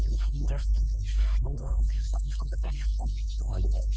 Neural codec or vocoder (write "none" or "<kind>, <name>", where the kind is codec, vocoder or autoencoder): codec, SNAC